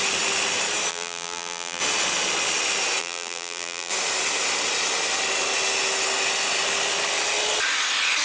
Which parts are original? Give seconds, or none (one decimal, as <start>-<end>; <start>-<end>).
0.0-0.9; 1.8-3.0; 3.9-8.2